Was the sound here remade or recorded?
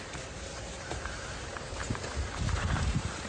remade